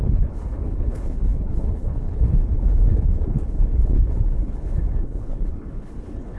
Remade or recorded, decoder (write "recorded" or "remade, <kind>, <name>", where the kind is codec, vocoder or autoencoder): remade, codec, HILCodec